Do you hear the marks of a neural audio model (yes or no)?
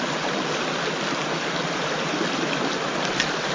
no